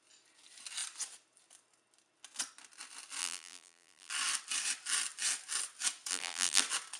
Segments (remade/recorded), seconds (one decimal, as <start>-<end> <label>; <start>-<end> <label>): 0.0-3.2 recorded; 3.2-4.1 remade; 4.1-6.1 recorded; 6.1-6.6 remade; 6.6-7.0 recorded